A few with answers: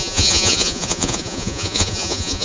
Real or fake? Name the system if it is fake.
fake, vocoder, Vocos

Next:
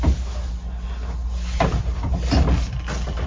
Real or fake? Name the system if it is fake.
real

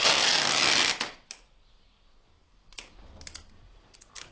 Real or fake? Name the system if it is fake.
real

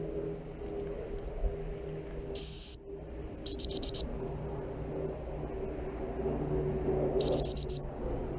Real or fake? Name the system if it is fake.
real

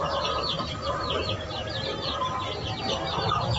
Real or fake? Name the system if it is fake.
real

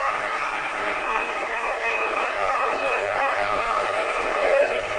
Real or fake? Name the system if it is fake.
fake, codec, SNAC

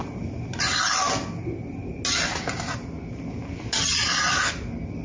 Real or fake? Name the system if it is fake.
real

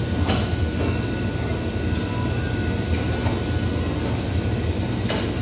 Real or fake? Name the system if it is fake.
real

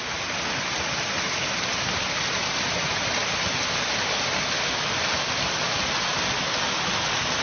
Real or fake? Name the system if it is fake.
real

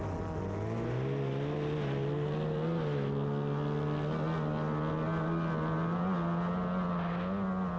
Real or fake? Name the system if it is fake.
real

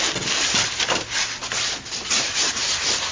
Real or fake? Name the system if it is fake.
real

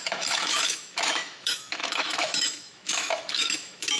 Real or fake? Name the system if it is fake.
fake, autoencoder, DAC-VAE